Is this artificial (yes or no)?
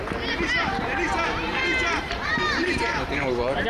yes